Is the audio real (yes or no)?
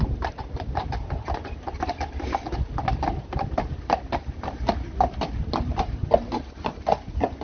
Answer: yes